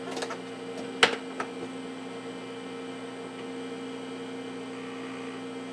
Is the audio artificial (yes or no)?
no